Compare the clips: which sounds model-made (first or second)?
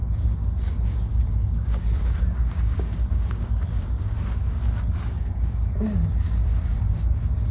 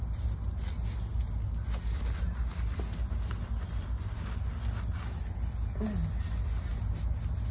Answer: first